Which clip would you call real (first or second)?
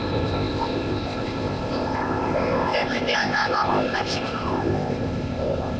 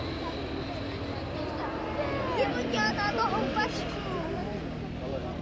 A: second